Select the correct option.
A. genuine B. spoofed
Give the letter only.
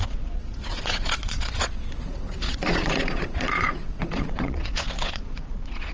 B